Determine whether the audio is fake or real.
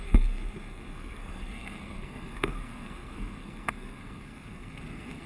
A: fake